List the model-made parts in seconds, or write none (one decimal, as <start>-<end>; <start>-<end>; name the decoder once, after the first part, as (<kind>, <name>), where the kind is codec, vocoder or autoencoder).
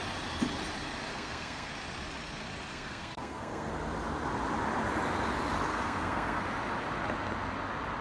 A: 1.1-1.7 (codec, SNAC); 2.7-3.7; 5.7-6.4